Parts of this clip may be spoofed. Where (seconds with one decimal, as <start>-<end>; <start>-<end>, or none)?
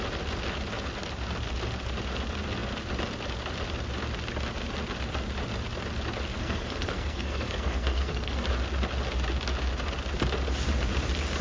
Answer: 6.3-8.5